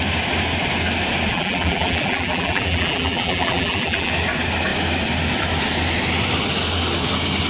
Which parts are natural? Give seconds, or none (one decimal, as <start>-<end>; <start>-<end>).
0.0-1.3; 4.1-7.5